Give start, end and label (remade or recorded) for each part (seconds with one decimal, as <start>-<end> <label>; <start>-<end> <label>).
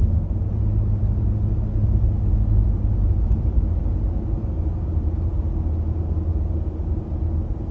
0.0-7.7 recorded